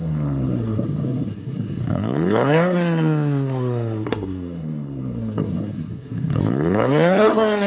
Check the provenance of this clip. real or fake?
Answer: fake